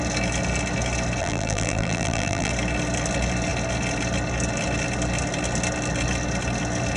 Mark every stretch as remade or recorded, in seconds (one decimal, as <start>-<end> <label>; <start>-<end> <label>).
0.0-1.2 recorded; 1.2-2.5 remade; 2.5-7.0 recorded